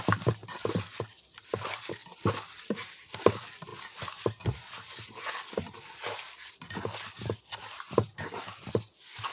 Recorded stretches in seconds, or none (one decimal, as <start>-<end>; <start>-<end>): 0.0-9.3